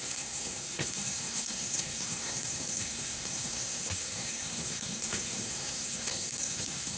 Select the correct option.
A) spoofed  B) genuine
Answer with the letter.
A